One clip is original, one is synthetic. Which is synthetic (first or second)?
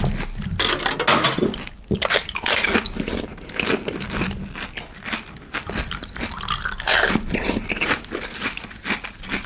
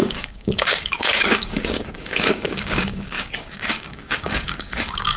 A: second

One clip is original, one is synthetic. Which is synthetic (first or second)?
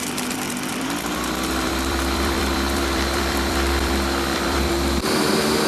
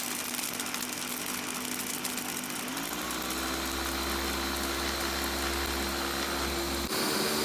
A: first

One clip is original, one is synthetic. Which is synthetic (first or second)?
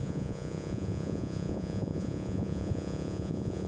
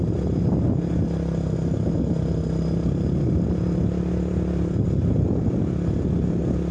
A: first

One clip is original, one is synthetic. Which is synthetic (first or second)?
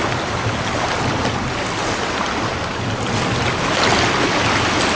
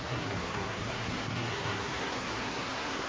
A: second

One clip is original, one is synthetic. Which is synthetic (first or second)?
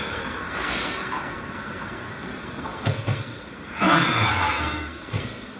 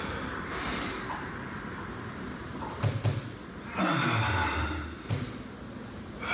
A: first